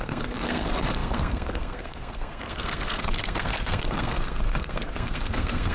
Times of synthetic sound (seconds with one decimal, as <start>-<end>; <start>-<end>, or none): 0.0-5.7